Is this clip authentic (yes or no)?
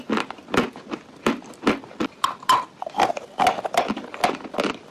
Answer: yes